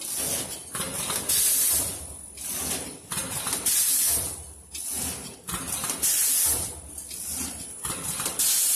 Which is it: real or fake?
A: real